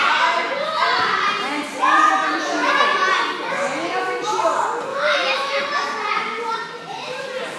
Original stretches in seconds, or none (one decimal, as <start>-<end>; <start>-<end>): 0.0-4.9; 5.6-7.6